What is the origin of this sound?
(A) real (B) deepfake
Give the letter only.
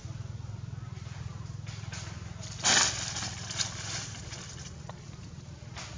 A